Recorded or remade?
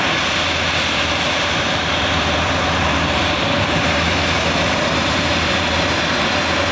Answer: remade